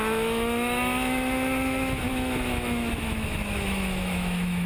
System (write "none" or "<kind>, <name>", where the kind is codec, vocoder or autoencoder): autoencoder, DAC-VAE